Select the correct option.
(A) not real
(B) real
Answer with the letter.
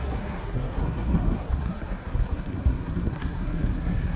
A